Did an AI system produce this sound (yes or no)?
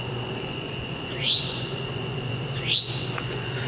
yes